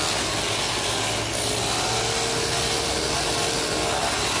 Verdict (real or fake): real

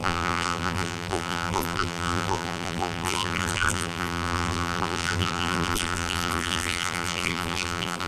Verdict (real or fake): fake